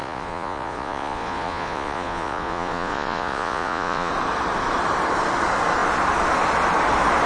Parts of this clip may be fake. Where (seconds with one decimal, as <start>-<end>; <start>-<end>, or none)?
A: 0.0-4.1

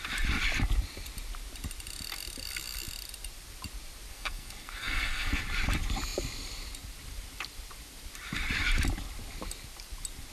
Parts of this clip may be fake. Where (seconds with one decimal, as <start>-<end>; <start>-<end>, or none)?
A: 4.1-5.4

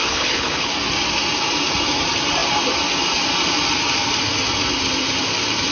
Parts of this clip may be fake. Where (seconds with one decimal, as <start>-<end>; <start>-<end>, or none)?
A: 0.0-0.7

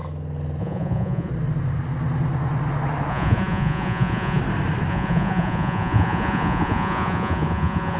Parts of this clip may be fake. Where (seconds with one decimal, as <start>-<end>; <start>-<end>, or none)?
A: 0.6-1.3; 3.1-4.4; 4.9-8.0